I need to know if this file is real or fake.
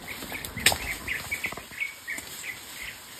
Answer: real